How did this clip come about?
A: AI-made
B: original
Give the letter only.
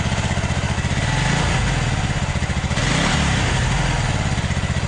B